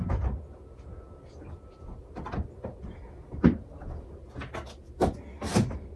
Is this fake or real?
real